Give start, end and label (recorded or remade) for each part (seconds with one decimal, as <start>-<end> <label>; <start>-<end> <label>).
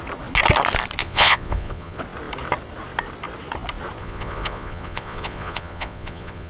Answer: 0.0-1.0 recorded; 1.0-2.0 remade; 2.0-4.0 recorded; 4.0-6.5 remade